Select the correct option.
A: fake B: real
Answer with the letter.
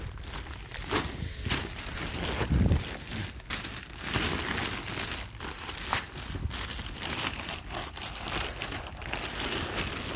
B